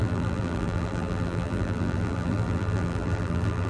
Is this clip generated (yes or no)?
yes